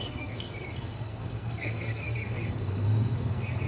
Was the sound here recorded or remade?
remade